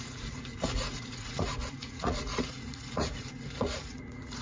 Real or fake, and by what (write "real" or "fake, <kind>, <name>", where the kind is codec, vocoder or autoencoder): fake, vocoder, Vocos